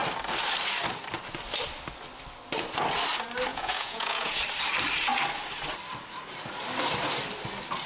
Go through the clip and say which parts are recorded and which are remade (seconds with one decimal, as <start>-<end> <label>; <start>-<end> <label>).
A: 0.0-3.5 recorded; 3.5-4.4 remade; 4.4-7.9 recorded